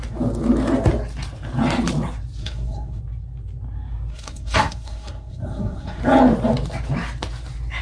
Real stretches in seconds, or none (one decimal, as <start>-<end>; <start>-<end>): 0.0-2.4; 3.0-4.1; 6.0-7.8